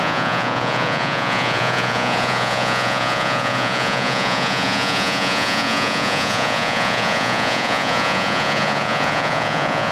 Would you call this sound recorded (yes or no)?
no